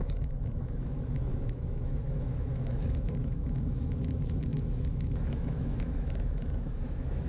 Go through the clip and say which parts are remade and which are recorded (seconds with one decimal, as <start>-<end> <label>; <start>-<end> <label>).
0.0-7.3 remade